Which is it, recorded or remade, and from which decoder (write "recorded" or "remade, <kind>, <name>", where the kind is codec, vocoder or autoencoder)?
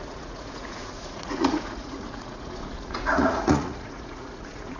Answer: remade, vocoder, Vocos